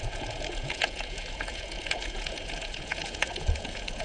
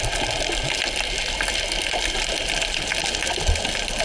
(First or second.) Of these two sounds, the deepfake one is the first